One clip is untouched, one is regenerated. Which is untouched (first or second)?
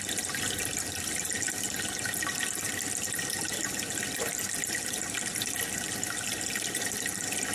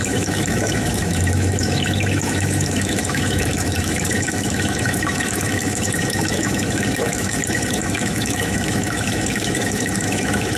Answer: first